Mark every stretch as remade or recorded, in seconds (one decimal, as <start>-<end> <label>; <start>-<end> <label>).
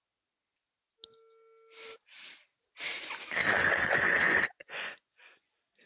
0.0-3.4 recorded; 3.4-5.5 remade; 5.5-5.9 recorded